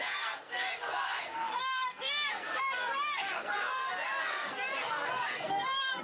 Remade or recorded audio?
remade